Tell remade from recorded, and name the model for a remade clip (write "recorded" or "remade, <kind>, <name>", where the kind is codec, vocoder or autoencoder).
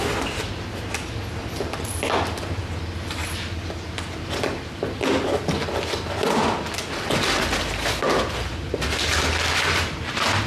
recorded